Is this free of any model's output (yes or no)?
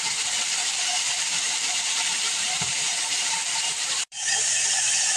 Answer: no